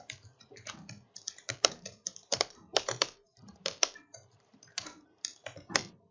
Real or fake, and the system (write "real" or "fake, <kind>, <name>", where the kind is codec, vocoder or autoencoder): fake, vocoder, BigVGAN v2